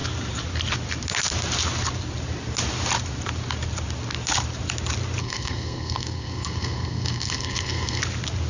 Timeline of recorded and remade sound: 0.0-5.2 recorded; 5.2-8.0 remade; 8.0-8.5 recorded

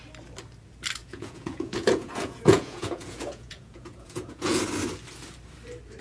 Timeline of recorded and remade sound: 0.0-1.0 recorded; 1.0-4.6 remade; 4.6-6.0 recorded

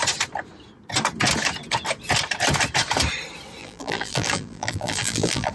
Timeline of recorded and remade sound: 0.0-3.6 recorded; 3.6-5.5 remade